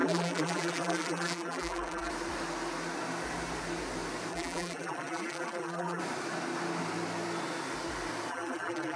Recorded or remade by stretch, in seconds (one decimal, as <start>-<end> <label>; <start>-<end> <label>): 0.0-2.1 remade; 2.1-4.3 recorded; 4.3-6.0 remade; 6.0-8.3 recorded; 8.3-9.0 remade